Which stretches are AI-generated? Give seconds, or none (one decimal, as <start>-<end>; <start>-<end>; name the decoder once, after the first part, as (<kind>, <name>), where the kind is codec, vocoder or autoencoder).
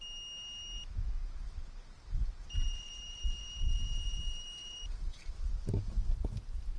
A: 1.2-5.3 (vocoder, BigVGAN v2)